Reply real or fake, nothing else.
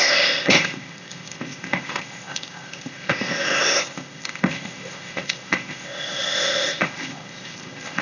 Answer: fake